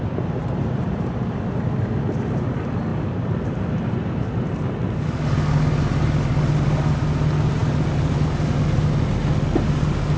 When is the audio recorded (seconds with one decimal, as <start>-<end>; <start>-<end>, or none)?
0.0-0.4; 1.3-10.2